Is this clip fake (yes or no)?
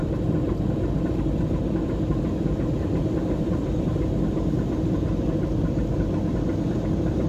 no